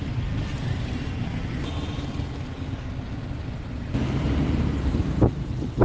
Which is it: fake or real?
real